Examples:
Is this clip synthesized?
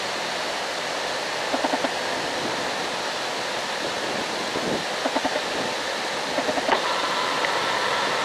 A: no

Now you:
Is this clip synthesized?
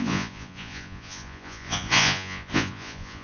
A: yes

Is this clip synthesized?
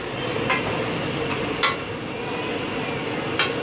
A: no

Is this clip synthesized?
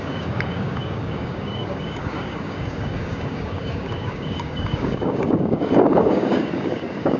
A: yes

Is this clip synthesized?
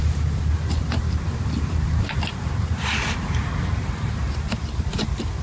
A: yes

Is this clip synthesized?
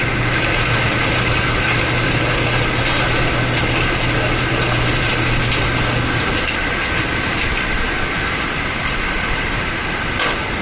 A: no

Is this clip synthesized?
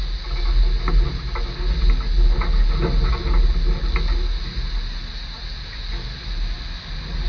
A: no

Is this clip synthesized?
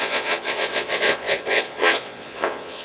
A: yes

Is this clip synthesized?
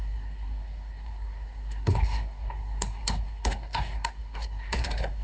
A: yes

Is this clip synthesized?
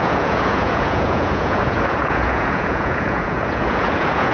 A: yes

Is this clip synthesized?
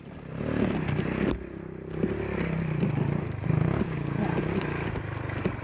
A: no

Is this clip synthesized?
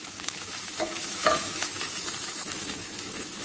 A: yes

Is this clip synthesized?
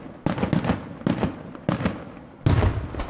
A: no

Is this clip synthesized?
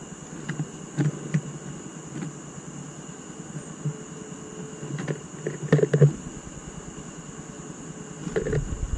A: no